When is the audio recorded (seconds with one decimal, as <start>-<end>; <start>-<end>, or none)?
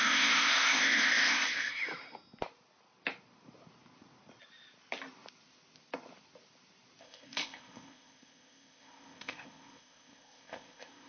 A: 1.8-7.0